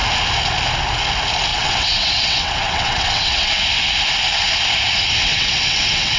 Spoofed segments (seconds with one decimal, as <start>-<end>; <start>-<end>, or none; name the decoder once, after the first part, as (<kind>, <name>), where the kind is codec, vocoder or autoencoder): 1.5-3.6 (vocoder, WaveNeXt); 5.2-6.2